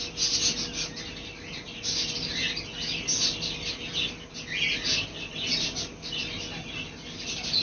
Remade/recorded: recorded